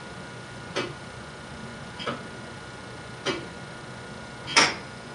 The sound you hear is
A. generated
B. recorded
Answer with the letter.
A